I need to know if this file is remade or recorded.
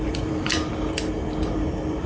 remade